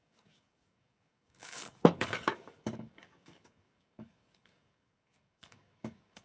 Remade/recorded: remade